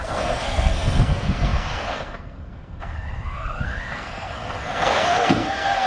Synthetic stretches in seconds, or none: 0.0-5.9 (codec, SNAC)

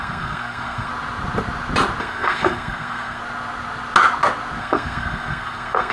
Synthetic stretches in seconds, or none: 0.0-0.9 (codec, SNAC); 2.0-3.2; 4.6-5.9

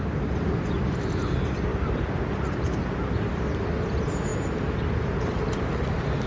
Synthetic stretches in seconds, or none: none

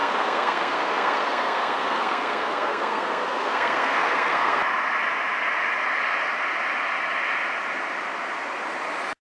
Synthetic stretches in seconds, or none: 0.0-4.6 (codec, SNAC)

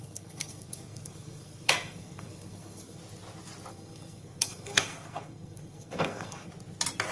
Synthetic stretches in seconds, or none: 0.0-3.0 (codec, SNAC); 3.7-6.5